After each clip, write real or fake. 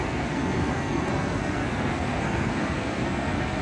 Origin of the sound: fake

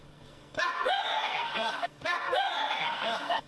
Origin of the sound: fake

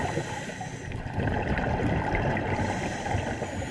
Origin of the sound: real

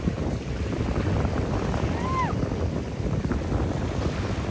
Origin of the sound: real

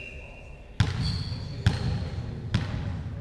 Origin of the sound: real